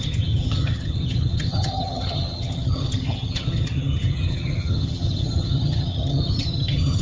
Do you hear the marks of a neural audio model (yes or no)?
yes